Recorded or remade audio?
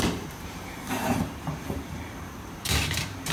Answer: remade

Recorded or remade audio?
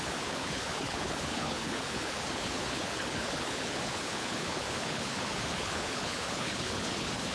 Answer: remade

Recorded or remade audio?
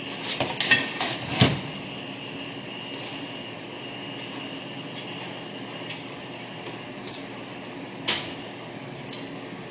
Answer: recorded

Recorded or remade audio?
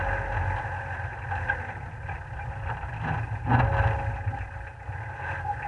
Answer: recorded